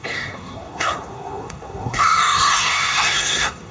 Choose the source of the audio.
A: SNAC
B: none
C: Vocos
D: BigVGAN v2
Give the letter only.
A